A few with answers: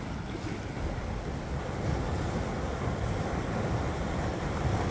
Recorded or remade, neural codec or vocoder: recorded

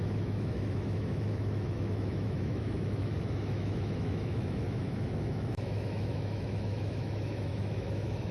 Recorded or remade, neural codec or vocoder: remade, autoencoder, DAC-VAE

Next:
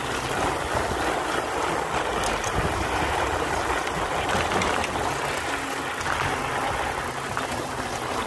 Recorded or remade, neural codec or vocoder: recorded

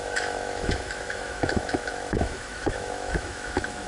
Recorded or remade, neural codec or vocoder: remade, autoencoder, DAC-VAE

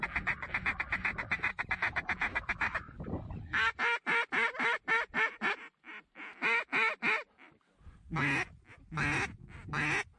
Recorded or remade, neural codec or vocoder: recorded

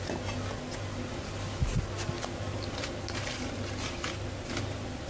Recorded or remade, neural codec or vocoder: recorded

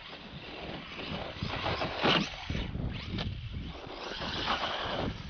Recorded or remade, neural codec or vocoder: recorded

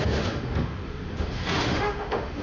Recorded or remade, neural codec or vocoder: remade, autoencoder, DAC-VAE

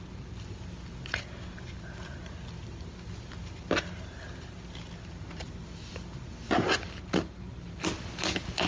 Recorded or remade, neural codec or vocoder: recorded